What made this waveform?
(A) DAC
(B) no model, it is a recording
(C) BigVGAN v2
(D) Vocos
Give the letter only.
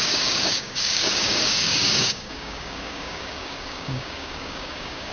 A